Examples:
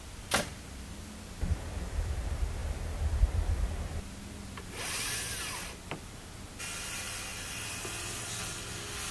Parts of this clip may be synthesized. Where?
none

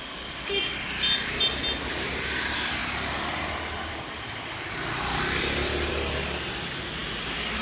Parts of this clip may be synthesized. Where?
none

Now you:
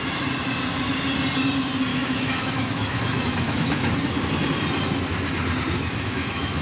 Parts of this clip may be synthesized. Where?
1.9-3.9 (autoencoder, DAC-VAE); 5.8-6.6

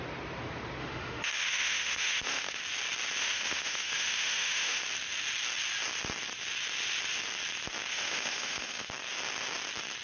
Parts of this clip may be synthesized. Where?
0.8-2.6 (autoencoder, DAC-VAE); 3.2-4.8; 7.9-8.9

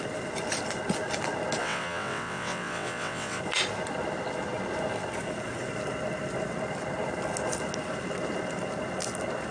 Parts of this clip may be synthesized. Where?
1.6-3.4 (vocoder, WaveNeXt)

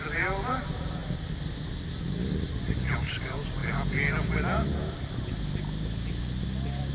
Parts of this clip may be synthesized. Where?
none

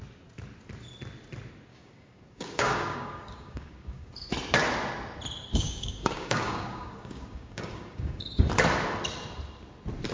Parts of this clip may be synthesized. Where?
1.7-4.1 (codec, DAC); 5.5-8.4

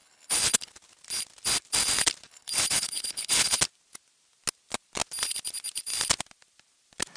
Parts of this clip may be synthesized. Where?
0.0-0.7 (codec, HILCodec); 2.3-3.6